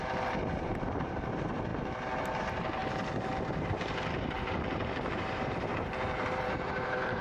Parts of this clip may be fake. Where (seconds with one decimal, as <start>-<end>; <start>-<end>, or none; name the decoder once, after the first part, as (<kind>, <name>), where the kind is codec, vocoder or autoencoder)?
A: 0.0-1.7 (vocoder, BigVGAN v2); 2.4-7.2